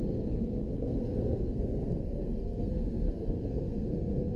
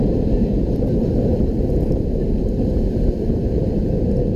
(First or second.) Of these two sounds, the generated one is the first